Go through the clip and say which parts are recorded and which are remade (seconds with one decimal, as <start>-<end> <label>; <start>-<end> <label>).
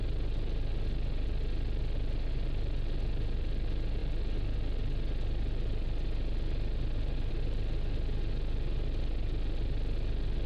0.0-10.5 recorded